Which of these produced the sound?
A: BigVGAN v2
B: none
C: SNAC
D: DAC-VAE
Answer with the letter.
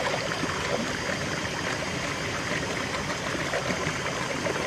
B